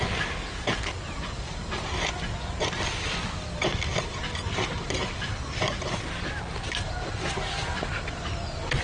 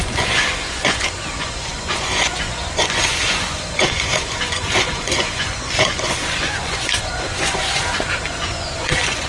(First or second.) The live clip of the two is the first